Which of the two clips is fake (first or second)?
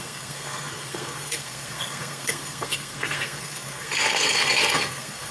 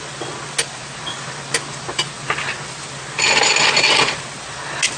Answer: first